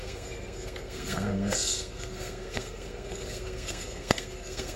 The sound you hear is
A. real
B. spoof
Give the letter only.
B